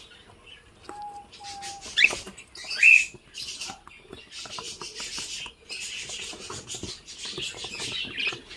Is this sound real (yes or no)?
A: yes